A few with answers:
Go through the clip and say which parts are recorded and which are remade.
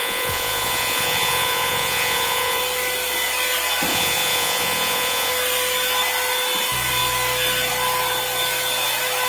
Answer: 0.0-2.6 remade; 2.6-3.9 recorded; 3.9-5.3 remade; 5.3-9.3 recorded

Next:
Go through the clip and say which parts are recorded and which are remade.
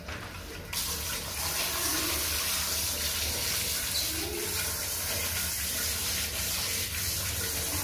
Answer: 0.0-7.8 recorded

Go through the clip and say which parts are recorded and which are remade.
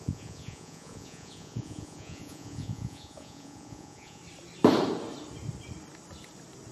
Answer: 0.0-4.2 remade; 4.2-6.7 recorded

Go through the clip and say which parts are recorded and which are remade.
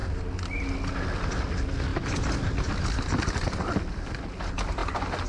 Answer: 0.0-1.9 recorded; 1.9-4.3 remade; 4.3-5.3 recorded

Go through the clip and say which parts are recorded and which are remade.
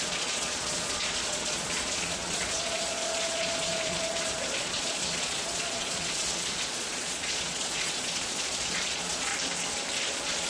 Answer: 0.0-9.3 remade; 9.3-10.0 recorded; 10.0-10.5 remade